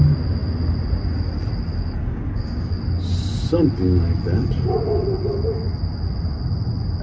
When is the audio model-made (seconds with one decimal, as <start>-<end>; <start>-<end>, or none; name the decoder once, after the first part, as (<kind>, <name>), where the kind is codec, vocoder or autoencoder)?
2.0-2.7 (codec, DAC)